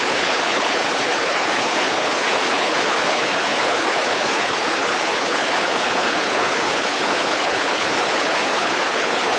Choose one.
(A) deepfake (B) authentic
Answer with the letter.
A